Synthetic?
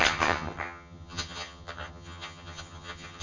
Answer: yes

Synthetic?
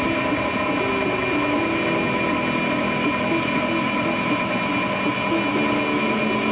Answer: no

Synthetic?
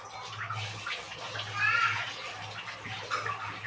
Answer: no